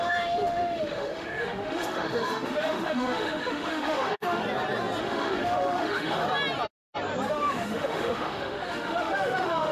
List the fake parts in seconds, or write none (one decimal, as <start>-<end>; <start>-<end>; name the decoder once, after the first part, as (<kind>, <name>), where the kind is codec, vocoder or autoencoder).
0.0-4.4 (autoencoder, DAC-VAE); 5.0-6.2; 7.3-9.7